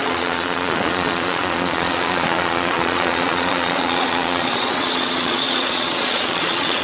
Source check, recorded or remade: remade